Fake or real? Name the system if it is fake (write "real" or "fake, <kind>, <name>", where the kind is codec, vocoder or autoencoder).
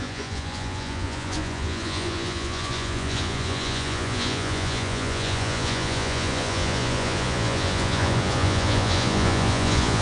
fake, vocoder, Vocos